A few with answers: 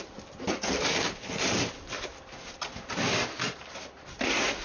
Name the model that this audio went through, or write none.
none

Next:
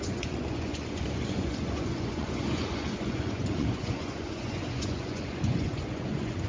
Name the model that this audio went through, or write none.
vocoder, Vocos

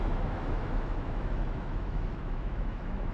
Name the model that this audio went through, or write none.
autoencoder, DAC-VAE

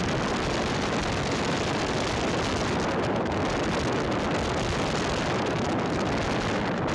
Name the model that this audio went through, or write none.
none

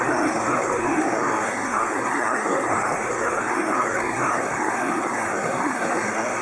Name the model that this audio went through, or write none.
codec, SNAC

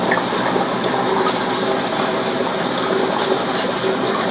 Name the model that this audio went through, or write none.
none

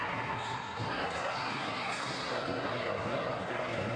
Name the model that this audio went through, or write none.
codec, SNAC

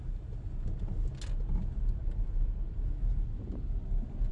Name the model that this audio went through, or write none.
none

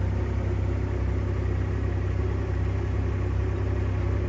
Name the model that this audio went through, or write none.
none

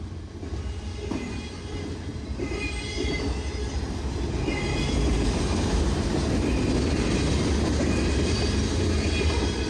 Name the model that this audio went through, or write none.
none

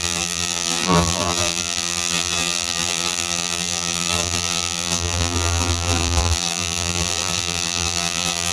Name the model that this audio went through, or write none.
vocoder, BigVGAN v2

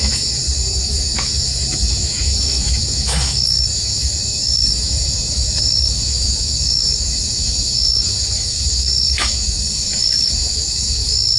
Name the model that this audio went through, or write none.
autoencoder, DAC-VAE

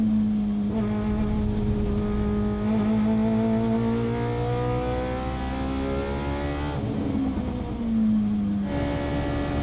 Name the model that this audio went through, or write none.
none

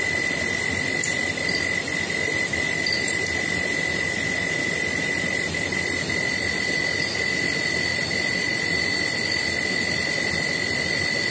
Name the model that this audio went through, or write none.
none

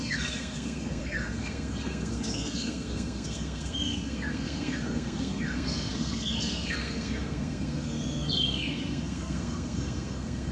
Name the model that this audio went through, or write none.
codec, SNAC